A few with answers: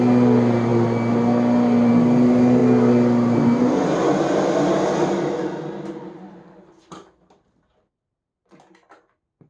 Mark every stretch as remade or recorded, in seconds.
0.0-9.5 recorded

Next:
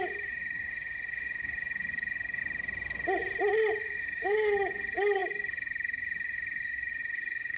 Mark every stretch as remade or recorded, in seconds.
0.0-2.4 remade; 2.4-3.8 recorded; 3.8-7.6 remade

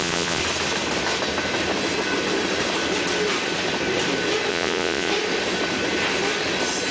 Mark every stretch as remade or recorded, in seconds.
0.0-0.4 remade; 0.4-4.5 recorded; 4.5-5.1 remade; 5.1-6.9 recorded

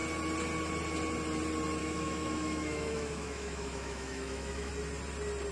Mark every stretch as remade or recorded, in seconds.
0.0-1.8 recorded; 1.8-4.7 remade; 4.7-5.5 recorded

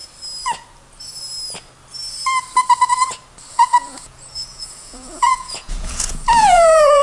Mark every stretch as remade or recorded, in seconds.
0.0-3.5 recorded; 3.5-7.0 remade

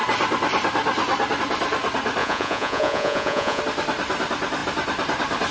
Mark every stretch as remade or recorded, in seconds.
0.0-2.2 recorded; 2.2-3.6 remade; 3.6-5.5 recorded

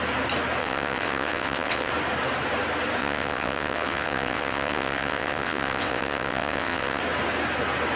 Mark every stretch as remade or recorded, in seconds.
0.0-0.6 recorded; 0.6-1.9 remade; 1.9-3.0 recorded; 3.0-7.0 remade; 7.0-8.0 recorded

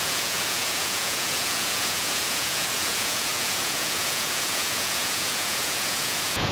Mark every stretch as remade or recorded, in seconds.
0.0-6.5 remade